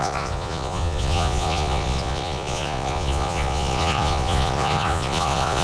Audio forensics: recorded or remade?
remade